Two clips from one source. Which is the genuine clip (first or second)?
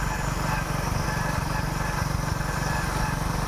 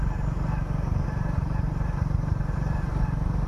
first